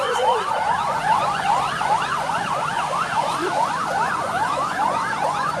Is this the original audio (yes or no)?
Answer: no